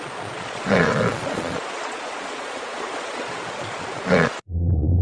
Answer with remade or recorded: remade